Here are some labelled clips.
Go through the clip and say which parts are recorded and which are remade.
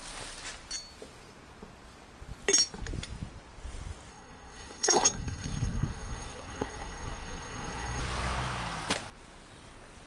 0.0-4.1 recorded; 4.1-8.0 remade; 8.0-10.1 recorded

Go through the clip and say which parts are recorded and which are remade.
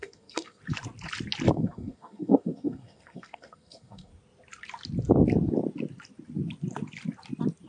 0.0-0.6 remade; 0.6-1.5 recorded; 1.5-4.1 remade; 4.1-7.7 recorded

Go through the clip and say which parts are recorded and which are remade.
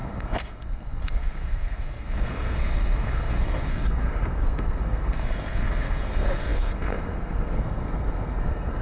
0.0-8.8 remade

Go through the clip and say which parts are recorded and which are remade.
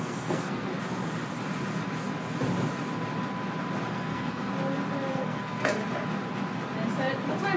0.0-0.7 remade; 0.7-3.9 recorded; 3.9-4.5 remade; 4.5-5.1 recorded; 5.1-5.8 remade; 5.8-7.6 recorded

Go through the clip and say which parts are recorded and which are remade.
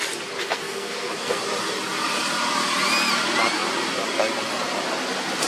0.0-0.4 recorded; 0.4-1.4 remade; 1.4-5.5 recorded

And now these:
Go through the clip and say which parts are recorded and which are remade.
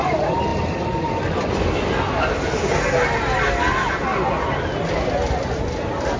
0.0-6.2 recorded